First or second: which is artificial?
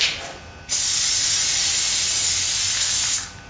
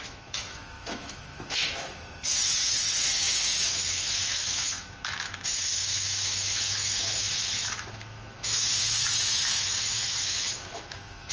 second